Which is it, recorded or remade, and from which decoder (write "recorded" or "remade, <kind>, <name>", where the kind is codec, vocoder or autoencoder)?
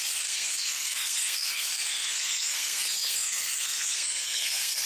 remade, codec, SNAC